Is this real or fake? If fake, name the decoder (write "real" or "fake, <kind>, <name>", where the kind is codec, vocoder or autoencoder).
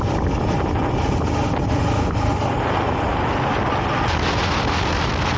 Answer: real